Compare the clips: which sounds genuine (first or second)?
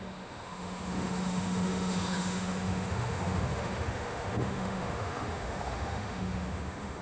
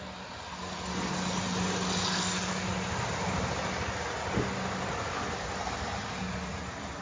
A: second